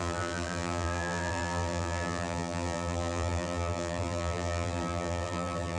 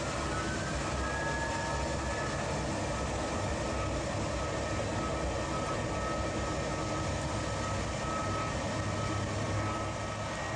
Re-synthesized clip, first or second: first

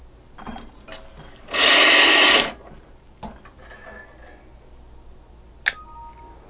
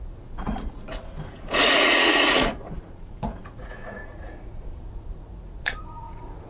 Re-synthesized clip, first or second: second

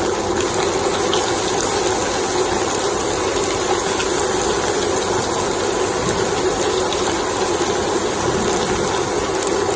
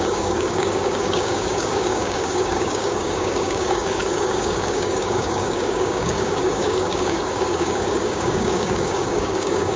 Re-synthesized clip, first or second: second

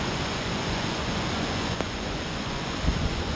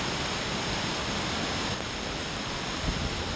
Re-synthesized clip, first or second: first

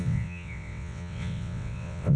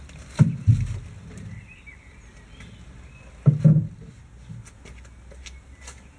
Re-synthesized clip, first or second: first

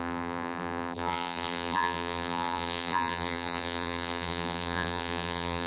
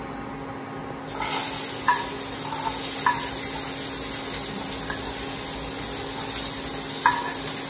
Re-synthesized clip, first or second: first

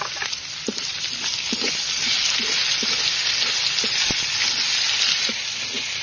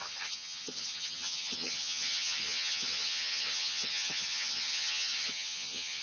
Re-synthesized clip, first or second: second